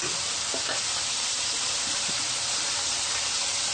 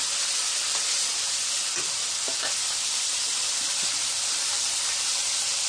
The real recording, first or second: first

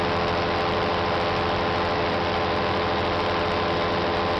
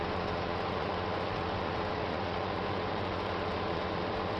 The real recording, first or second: first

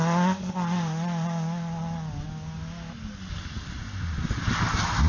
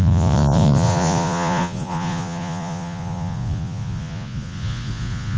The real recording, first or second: first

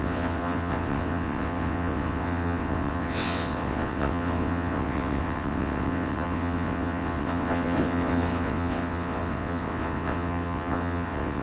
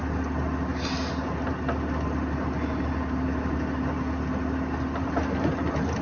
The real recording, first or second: second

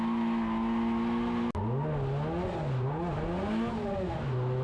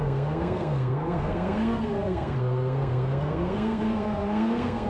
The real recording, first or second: first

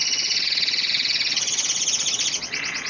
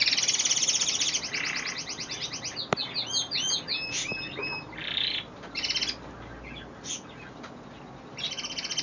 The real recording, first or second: second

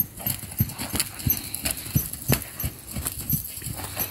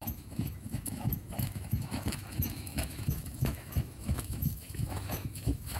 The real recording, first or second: first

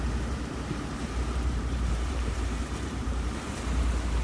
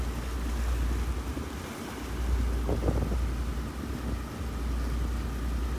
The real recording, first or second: second